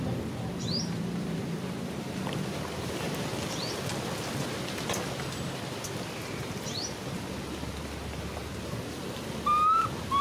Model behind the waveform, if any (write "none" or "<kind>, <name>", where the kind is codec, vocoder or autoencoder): none